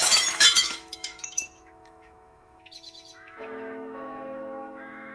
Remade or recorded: remade